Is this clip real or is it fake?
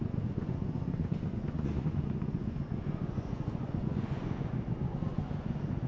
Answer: fake